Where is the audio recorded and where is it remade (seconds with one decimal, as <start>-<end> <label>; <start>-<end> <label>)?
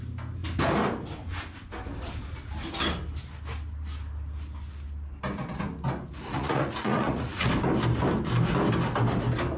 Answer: 0.0-6.2 recorded; 6.2-7.5 remade; 7.5-9.6 recorded